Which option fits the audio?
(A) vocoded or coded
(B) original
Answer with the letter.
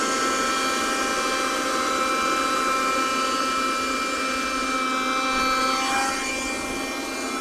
B